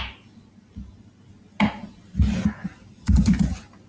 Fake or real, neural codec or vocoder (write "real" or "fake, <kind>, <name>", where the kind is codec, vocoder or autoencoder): real